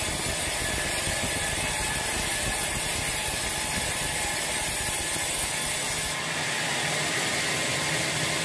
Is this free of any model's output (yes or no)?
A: yes